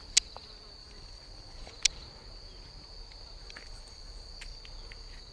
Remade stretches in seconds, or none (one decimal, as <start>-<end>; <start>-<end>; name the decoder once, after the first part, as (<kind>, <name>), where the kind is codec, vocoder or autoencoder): 0.8-1.7 (vocoder, BigVGAN v2); 3.4-4.3